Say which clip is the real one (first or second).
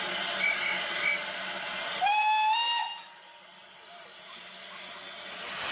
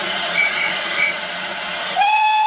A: first